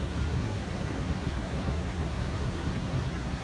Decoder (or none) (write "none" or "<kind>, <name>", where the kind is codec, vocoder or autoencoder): codec, SNAC